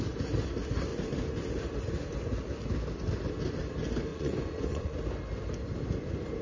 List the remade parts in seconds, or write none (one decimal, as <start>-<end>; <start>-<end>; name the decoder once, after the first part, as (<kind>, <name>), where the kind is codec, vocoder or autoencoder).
4.1-4.9 (vocoder, Vocos)